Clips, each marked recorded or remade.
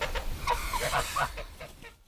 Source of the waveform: remade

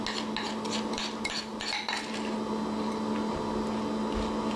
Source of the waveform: recorded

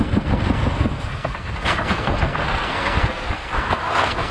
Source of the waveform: remade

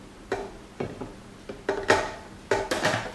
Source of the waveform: recorded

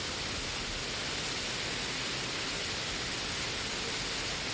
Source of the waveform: recorded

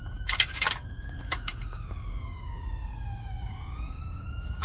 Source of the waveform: remade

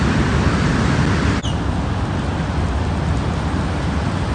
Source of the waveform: recorded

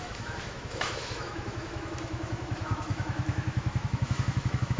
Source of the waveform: remade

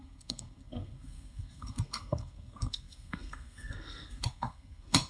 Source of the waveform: remade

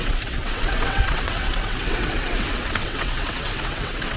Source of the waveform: remade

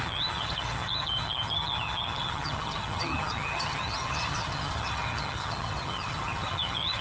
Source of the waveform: remade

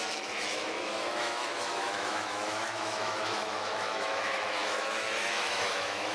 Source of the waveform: remade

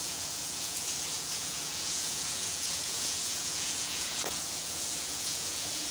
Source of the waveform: remade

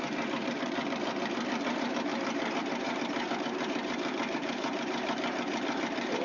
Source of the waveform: remade